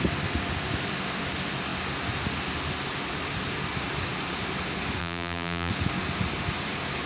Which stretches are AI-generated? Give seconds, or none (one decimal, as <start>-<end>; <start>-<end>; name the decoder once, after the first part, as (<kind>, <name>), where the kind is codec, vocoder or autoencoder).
5.0-5.7 (vocoder, BigVGAN v2)

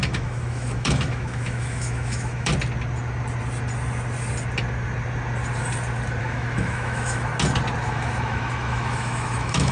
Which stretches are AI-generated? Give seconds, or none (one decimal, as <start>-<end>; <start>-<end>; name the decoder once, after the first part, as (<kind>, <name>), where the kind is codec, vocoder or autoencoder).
0.0-2.5 (autoencoder, DAC-VAE); 6.2-7.3; 7.8-9.7